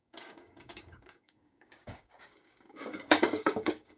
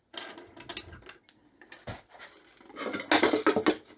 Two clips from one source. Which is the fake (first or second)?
first